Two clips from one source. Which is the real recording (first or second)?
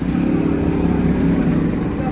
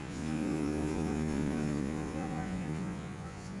first